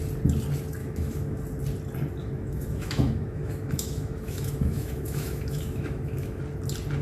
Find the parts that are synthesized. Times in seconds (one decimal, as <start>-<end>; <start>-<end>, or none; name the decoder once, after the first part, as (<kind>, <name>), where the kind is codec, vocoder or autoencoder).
0.8-1.4 (autoencoder, DAC-VAE); 2.2-6.4